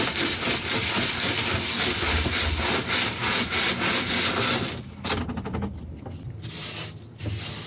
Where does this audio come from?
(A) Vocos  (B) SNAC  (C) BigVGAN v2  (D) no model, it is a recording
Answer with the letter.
D